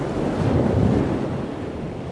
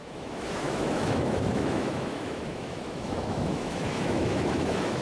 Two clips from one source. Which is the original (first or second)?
first